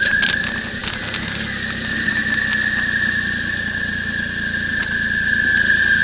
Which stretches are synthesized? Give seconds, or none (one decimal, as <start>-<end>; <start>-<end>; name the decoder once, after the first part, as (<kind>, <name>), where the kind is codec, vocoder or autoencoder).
none